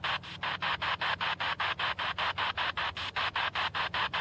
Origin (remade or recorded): recorded